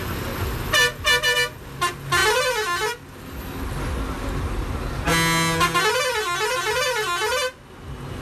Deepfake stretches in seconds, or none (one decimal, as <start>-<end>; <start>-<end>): none